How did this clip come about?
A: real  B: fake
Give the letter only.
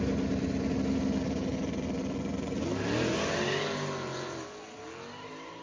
A